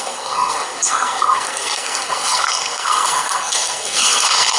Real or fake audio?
fake